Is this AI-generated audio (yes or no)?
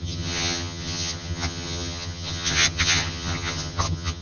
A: yes